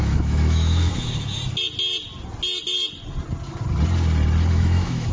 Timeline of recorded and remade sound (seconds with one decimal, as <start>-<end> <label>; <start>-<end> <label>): 0.0-1.4 remade; 1.4-4.5 recorded; 4.5-5.1 remade